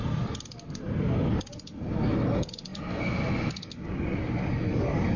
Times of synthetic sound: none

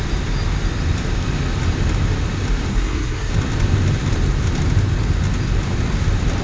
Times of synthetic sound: 2.7-3.3 (codec, SNAC)

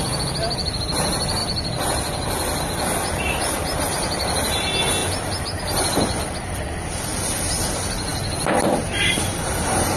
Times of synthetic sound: none

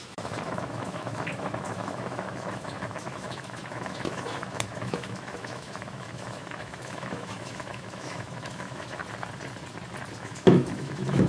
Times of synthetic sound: 0.0-9.0 (autoencoder, DAC-VAE); 10.2-11.3